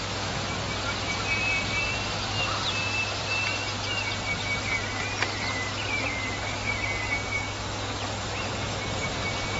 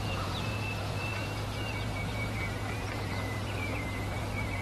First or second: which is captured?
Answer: first